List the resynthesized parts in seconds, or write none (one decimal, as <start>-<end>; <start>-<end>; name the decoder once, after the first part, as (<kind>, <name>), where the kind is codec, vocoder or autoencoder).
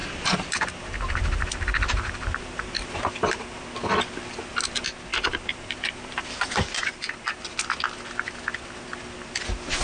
0.0-3.6 (vocoder, BigVGAN v2); 5.1-7.5